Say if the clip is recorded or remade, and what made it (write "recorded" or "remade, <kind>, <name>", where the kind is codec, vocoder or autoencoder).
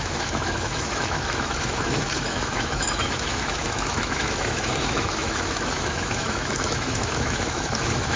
remade, autoencoder, DAC-VAE